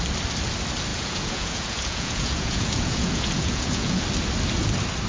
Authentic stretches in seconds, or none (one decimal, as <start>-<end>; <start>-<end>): 0.0-0.9; 4.0-5.1